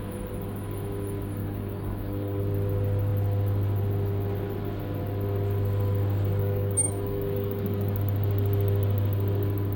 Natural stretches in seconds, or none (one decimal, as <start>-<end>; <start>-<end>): 0.0-1.4; 2.4-6.4; 8.0-9.8